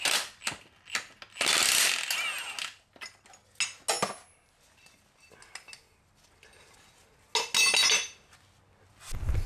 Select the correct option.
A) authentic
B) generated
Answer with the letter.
A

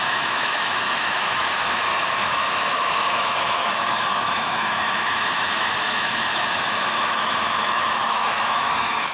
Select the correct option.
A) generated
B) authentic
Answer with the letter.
A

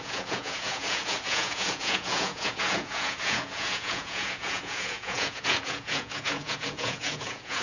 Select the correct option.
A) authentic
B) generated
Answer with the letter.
B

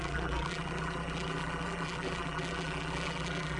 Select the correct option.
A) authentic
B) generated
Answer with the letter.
B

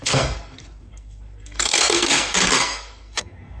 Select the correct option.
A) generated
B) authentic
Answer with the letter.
A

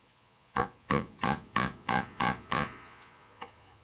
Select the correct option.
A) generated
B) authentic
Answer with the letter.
A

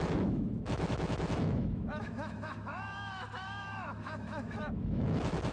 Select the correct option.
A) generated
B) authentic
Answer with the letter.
A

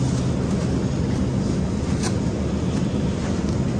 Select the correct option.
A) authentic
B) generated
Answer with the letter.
A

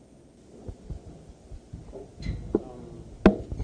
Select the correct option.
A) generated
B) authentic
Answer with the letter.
B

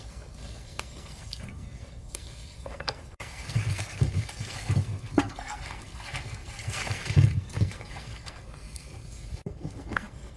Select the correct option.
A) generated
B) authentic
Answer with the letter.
A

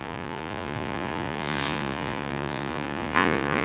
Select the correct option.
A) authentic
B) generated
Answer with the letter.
B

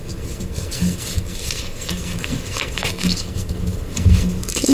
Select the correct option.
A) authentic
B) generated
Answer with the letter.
B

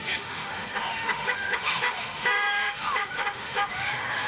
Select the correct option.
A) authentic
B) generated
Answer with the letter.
B